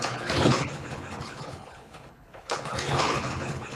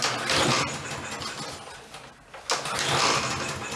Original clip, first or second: second